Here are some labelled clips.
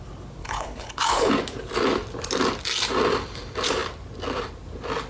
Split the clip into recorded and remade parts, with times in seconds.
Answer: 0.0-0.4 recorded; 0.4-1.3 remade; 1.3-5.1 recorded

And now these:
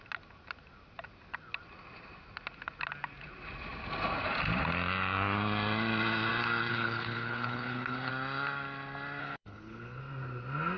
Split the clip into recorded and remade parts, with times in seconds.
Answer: 0.0-6.7 recorded; 6.7-8.1 remade; 8.1-9.2 recorded; 9.2-10.0 remade; 10.0-10.8 recorded

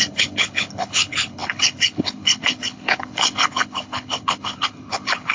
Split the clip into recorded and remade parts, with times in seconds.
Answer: 0.0-5.3 remade

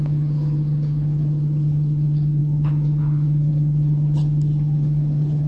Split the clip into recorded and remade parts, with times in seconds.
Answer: 0.0-5.5 remade

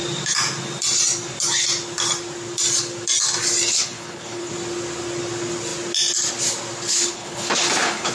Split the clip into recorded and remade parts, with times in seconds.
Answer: 0.0-3.7 recorded; 3.7-4.5 remade; 4.5-6.9 recorded; 6.9-8.1 remade

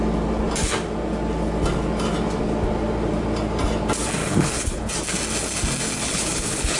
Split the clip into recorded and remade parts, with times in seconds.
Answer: 0.0-4.2 recorded; 4.2-4.9 remade; 4.9-6.0 recorded; 6.0-6.8 remade